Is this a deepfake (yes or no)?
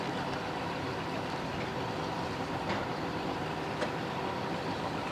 no